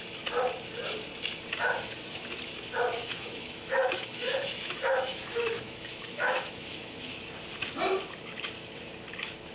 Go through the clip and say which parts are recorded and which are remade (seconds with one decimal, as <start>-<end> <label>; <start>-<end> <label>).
0.0-3.0 recorded; 3.0-7.2 remade; 7.2-9.5 recorded